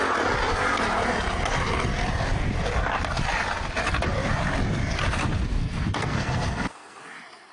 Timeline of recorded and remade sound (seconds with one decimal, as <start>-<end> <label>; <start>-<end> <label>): 0.0-5.6 recorded; 5.6-7.0 remade; 7.0-7.5 recorded